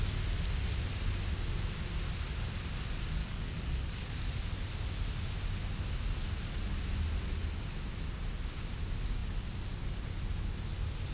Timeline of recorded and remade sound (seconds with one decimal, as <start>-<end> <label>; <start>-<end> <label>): 0.0-3.2 recorded; 3.2-4.3 remade; 4.3-11.1 recorded